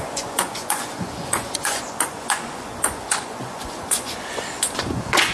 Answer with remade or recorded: remade